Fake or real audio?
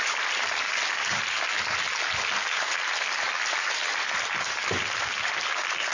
real